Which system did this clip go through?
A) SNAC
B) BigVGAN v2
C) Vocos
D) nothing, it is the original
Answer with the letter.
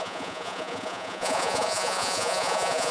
C